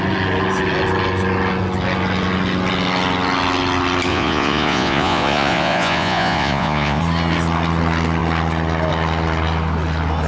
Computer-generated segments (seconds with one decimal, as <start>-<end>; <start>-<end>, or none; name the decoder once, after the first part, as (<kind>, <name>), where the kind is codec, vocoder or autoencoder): 4.1-7.0 (vocoder, Vocos)